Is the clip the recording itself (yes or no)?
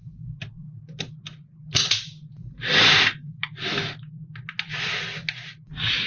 yes